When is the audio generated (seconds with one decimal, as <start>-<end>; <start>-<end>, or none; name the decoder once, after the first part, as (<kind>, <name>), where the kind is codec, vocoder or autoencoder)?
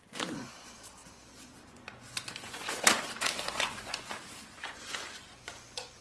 0.0-6.0 (vocoder, Vocos)